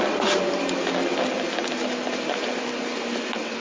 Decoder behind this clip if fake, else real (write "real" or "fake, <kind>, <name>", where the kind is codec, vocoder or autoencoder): real